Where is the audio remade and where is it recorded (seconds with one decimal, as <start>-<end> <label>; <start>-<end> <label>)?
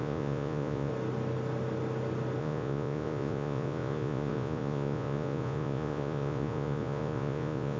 0.0-0.9 remade; 0.9-2.4 recorded; 2.4-7.8 remade